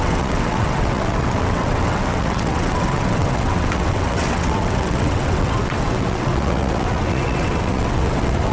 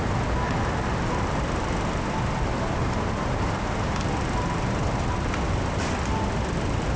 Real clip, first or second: second